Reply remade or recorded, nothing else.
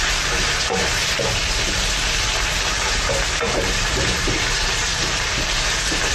remade